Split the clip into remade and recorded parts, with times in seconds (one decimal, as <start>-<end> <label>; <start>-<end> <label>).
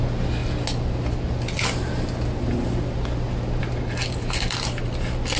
0.0-5.4 recorded